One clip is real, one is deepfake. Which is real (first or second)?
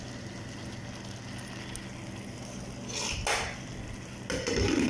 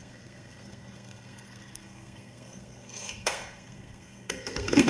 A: first